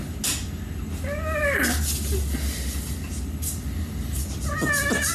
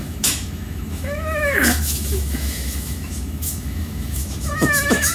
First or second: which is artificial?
second